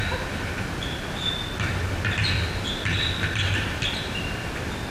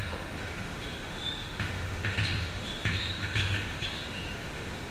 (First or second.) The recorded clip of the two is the first